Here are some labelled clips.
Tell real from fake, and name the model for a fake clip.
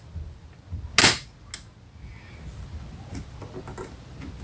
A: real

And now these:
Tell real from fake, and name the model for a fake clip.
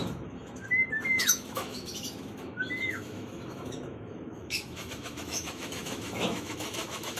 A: fake, autoencoder, DAC-VAE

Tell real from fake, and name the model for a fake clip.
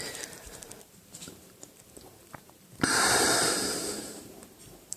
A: fake, vocoder, BigVGAN v2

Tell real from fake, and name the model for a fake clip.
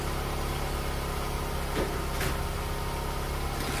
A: real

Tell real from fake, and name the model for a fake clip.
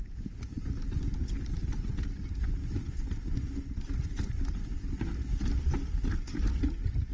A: real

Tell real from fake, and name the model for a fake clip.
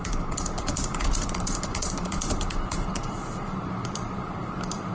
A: fake, vocoder, BigVGAN v2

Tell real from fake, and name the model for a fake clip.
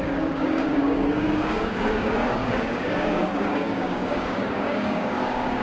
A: fake, codec, DAC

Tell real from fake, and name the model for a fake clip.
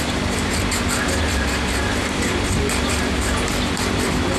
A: real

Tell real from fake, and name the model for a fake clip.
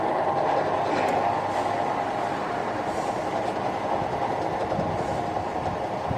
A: real